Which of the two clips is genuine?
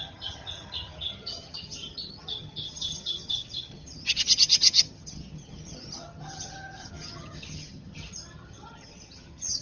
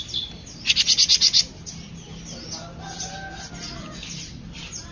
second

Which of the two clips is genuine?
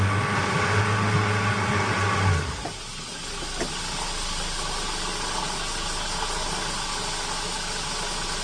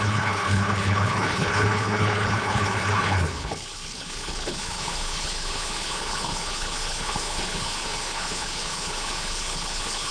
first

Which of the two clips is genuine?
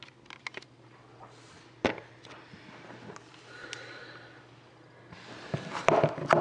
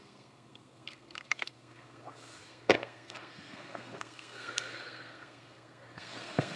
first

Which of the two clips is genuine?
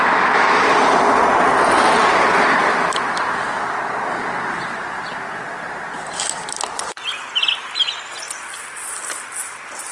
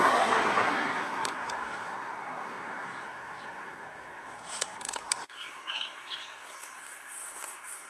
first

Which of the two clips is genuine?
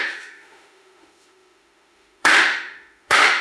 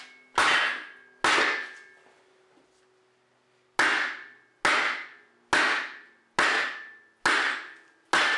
second